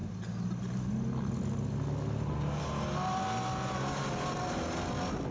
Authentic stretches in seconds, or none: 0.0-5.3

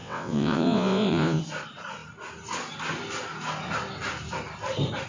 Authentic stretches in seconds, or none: 1.4-5.1

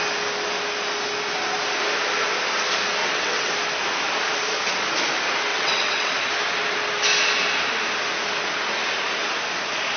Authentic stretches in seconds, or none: 0.0-3.0; 3.5-5.5; 6.1-10.0

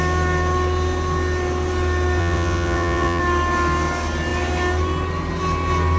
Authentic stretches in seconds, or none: 0.0-2.2; 3.2-6.0

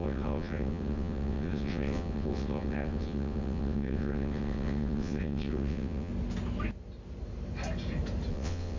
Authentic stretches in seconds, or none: 6.1-8.3